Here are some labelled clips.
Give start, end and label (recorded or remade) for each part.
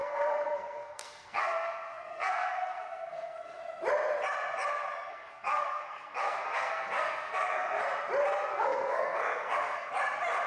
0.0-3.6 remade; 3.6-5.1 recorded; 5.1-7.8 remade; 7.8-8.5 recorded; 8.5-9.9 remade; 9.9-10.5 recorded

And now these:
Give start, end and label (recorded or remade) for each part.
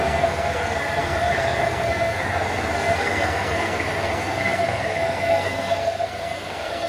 0.0-6.9 remade